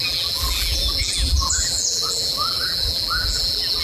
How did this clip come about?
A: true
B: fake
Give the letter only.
B